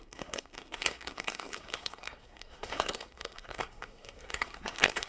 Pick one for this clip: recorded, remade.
remade